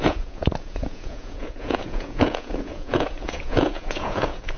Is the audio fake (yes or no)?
yes